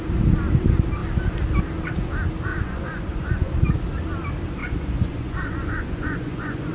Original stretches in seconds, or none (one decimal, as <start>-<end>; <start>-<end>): 0.0-2.5; 3.5-4.6

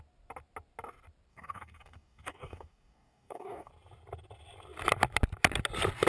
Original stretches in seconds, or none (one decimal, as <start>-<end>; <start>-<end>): 0.0-1.3; 3.7-6.1

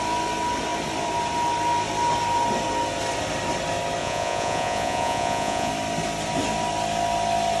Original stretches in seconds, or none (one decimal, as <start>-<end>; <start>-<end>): 0.0-4.0; 5.7-7.6